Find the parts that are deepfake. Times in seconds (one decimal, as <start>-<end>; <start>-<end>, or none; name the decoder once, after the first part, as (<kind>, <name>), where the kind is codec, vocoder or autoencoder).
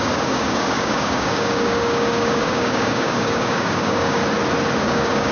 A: 0.0-4.2 (codec, DAC); 4.8-5.3